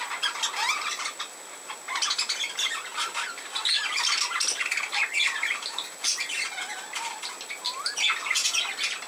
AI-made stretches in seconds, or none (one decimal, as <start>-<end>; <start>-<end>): none